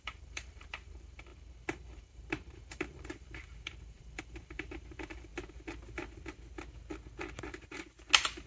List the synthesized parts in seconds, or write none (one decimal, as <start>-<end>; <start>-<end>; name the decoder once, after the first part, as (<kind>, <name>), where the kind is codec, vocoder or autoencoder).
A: 0.0-5.3 (vocoder, BigVGAN v2)